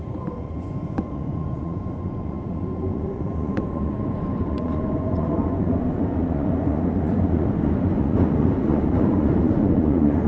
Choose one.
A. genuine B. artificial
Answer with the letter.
B